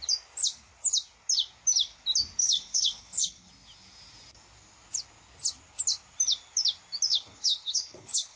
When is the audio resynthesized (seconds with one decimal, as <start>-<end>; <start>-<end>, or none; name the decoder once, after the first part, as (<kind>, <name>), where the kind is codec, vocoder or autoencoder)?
2.4-3.5 (codec, HILCodec); 7.1-8.4